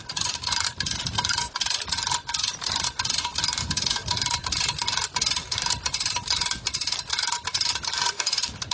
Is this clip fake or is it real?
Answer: real